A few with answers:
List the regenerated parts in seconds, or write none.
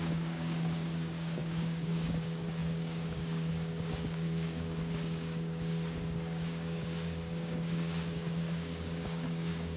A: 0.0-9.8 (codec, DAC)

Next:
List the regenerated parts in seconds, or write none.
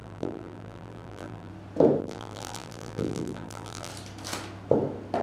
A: 0.0-1.5 (vocoder, BigVGAN v2); 2.0-3.9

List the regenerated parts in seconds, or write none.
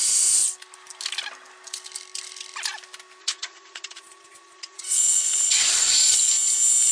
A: 3.2-6.3 (vocoder, Vocos)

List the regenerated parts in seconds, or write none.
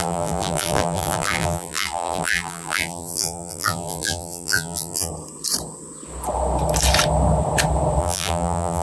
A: 0.0-5.1 (vocoder, BigVGAN v2); 8.0-8.8